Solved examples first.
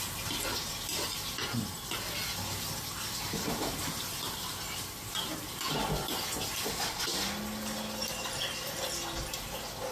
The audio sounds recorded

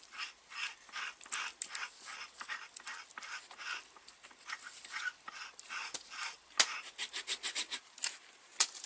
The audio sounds recorded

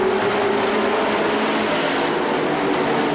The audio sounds recorded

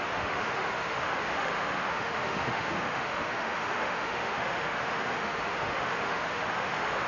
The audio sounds remade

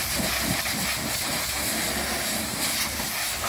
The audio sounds recorded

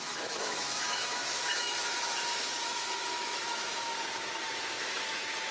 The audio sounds remade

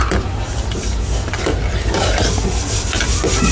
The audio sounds recorded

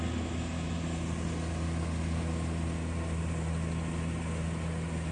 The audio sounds recorded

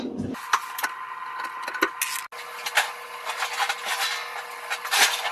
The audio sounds recorded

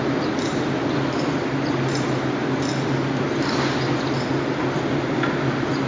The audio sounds recorded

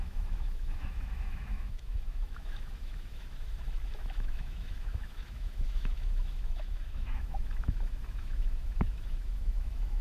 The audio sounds remade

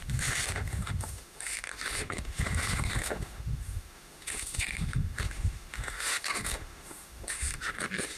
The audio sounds remade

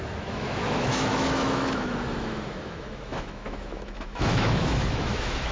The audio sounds remade